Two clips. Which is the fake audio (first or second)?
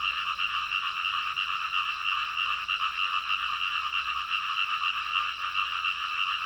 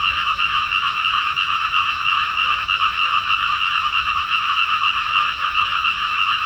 second